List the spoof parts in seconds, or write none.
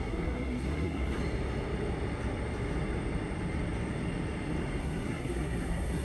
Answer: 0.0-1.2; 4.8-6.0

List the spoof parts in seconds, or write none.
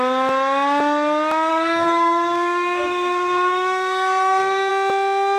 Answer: 1.5-4.7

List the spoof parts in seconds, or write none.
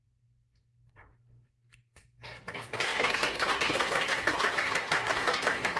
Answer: 0.0-5.8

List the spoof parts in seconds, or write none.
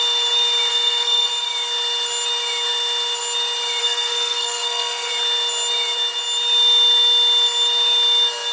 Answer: 0.7-1.3; 3.8-5.1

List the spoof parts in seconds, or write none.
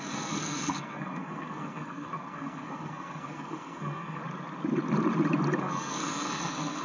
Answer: 0.0-4.2; 5.6-6.8